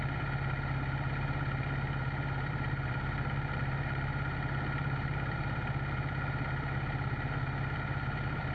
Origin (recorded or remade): remade